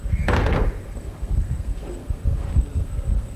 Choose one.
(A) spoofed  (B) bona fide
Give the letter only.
A